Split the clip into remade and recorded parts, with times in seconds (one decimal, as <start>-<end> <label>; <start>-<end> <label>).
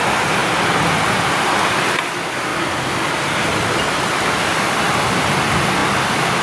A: 0.0-0.4 remade; 0.4-1.2 recorded; 1.2-2.5 remade; 2.5-4.6 recorded; 4.6-5.8 remade; 5.8-6.4 recorded